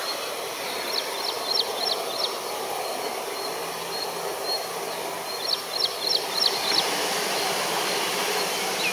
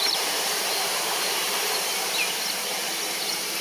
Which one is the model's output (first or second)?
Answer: second